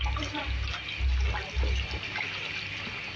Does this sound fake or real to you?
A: real